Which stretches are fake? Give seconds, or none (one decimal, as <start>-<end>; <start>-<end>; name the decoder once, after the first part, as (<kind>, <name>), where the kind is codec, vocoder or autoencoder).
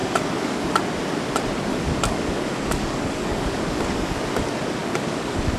0.0-0.8 (codec, DAC); 1.7-4.2; 4.8-5.6